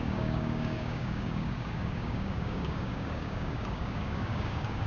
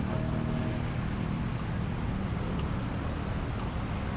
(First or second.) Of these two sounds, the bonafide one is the second